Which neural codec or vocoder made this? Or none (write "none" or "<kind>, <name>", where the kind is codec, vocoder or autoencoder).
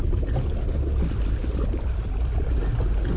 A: none